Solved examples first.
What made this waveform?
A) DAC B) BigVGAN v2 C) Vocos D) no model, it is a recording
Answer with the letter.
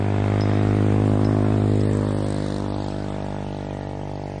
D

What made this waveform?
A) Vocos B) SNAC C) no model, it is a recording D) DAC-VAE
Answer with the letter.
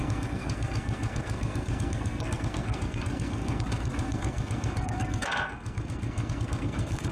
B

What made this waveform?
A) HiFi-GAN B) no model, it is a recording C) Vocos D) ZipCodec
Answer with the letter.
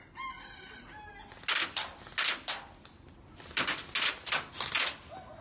B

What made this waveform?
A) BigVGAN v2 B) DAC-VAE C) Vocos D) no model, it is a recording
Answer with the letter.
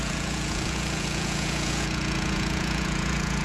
C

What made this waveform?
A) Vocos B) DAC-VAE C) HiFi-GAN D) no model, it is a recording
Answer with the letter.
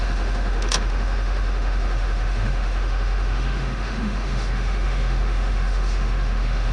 B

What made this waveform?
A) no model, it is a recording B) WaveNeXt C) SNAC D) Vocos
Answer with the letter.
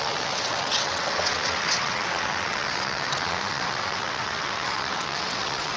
B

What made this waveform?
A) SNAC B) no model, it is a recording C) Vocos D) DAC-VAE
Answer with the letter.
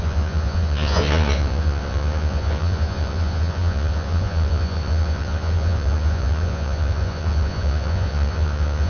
C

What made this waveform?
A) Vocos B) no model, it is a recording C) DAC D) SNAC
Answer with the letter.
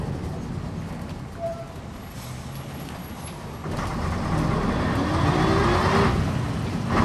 B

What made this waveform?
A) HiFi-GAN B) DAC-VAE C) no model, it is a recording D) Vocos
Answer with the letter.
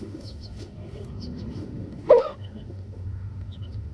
B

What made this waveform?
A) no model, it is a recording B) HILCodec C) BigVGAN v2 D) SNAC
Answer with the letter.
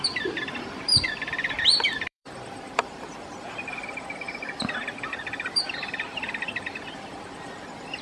C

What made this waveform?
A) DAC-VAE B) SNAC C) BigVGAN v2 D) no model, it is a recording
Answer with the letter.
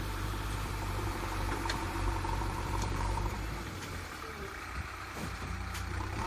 C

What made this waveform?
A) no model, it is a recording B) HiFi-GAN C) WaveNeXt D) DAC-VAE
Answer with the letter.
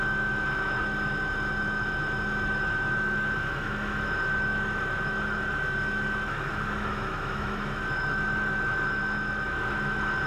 D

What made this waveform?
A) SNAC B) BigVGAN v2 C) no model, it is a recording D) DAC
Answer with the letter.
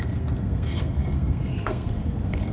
A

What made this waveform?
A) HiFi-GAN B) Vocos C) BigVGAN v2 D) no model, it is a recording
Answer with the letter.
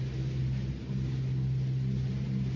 D